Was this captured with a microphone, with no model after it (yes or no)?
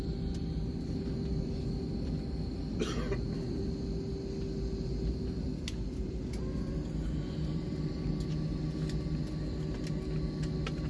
yes